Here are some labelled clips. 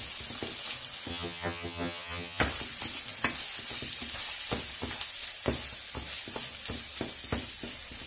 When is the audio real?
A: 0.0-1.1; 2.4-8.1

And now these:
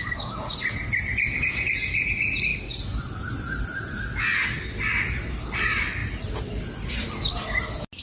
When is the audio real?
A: 0.0-8.0